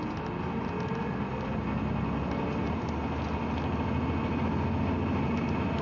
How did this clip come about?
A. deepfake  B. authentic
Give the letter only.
B